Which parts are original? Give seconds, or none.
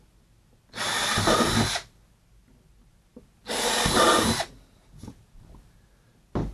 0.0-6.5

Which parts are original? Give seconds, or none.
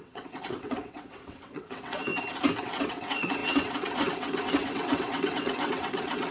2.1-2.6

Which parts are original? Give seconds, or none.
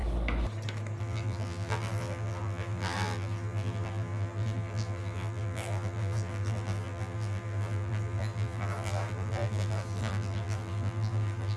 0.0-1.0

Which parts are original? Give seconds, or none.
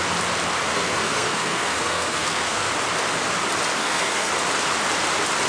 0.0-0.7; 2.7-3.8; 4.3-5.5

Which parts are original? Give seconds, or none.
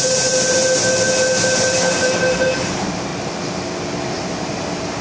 0.6-1.9; 3.1-4.2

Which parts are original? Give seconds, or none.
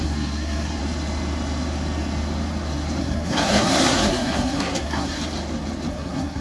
0.8-3.0; 5.2-5.9